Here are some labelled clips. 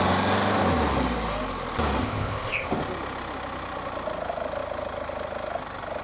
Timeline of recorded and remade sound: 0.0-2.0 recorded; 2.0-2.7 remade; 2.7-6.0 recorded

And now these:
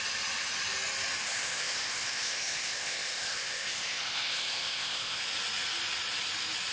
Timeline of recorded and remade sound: 0.0-1.2 recorded; 1.2-5.2 remade; 5.2-6.7 recorded

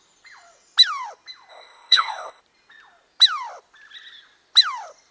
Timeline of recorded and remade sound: 0.0-1.5 recorded; 1.5-2.4 remade; 2.4-5.1 recorded

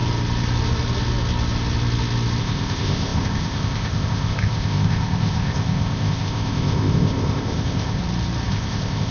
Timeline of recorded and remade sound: 0.0-2.4 recorded; 2.4-8.0 remade; 8.0-8.5 recorded; 8.5-9.1 remade